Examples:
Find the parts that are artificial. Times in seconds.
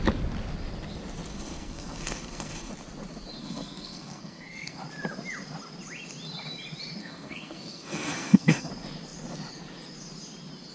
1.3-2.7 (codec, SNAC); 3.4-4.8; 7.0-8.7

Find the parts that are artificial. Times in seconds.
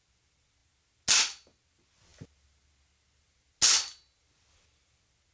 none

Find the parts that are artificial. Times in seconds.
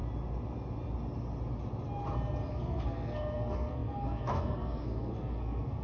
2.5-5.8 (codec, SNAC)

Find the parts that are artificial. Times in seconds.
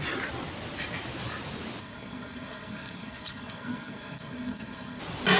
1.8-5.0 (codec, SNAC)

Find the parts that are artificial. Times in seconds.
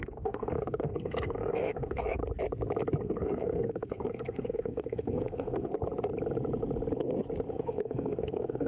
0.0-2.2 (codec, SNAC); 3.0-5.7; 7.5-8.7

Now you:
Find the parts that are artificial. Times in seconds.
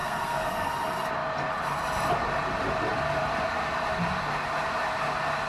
0.0-0.7 (codec, SNAC)